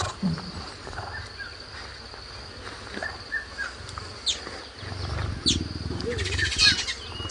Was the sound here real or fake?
real